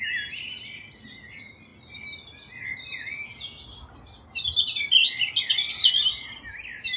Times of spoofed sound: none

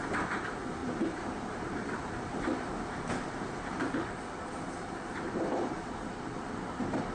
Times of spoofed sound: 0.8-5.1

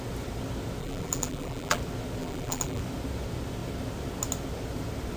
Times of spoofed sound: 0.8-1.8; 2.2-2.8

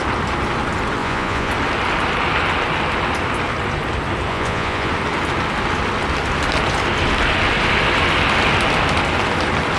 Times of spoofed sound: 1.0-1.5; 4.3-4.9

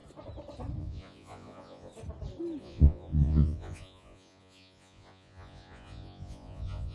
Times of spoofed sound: 0.8-1.9; 2.6-6.9

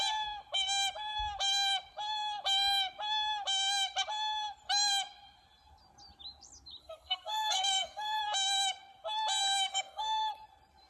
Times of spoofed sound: 6.8-8.2; 9.7-10.3

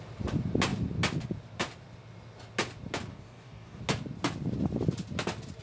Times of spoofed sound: 3.1-3.8